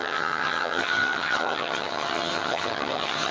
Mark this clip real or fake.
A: fake